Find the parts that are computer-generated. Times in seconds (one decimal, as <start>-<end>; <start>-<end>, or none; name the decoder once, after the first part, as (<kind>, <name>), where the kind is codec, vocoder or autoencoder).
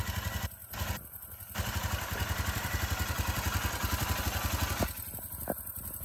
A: 0.6-4.2 (vocoder, BigVGAN v2)